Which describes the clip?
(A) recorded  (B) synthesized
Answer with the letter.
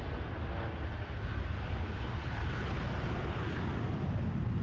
A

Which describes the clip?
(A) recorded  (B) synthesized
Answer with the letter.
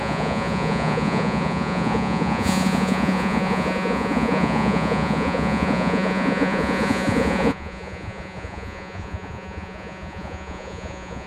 B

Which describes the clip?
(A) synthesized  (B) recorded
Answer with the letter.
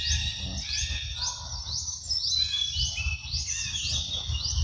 B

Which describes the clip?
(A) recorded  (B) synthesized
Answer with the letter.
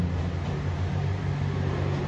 A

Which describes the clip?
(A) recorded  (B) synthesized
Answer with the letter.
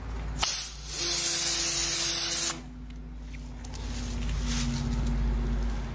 A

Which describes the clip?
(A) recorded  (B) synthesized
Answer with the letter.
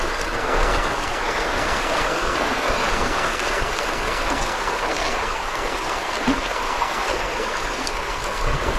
B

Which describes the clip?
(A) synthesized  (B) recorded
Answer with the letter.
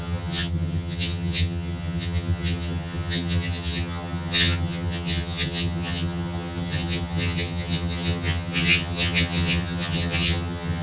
A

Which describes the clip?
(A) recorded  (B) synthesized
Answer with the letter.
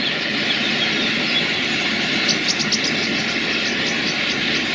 A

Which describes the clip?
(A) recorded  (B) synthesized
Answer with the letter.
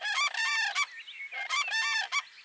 A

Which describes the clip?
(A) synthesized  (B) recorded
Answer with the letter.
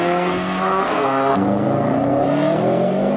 A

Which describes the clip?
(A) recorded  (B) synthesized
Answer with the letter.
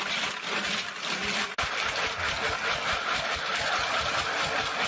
B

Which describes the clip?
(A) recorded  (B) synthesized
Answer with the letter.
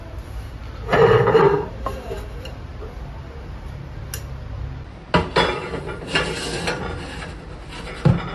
A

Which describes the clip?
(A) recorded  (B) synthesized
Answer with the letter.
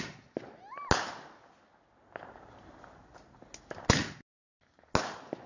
A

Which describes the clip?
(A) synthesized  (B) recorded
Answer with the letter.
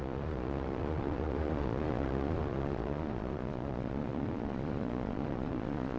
A